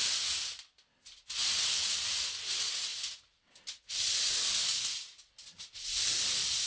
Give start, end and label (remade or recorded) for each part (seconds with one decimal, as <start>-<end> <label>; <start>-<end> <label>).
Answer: 0.0-2.9 recorded; 2.9-6.7 remade